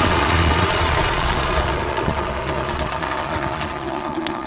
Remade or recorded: remade